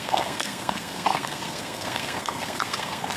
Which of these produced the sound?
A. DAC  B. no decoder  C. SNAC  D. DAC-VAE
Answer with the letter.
C